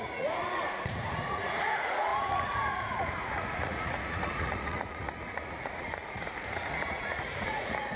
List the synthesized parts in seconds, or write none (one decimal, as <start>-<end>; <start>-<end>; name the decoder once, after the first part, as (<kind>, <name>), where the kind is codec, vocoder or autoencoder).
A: 0.0-8.0 (vocoder, Vocos)